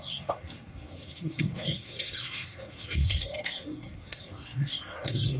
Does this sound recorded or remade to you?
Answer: remade